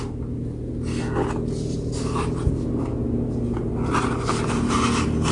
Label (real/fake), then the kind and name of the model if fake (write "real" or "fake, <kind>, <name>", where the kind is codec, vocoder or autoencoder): real